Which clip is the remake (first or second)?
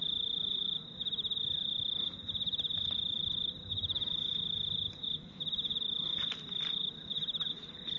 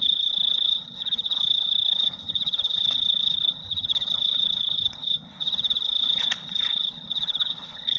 second